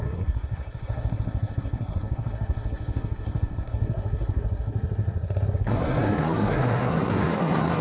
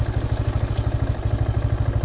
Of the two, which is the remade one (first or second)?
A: first